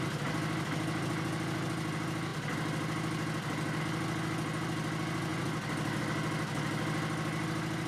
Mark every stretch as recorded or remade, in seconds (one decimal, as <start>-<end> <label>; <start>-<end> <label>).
0.0-7.9 recorded